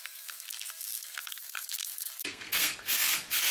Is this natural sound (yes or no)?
no